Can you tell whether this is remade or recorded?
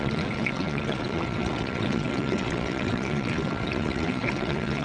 remade